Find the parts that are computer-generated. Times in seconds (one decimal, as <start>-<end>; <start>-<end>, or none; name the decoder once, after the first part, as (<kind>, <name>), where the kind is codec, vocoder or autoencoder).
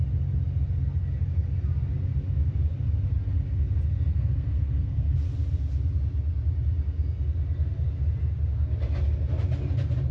4.1-5.1 (codec, SNAC)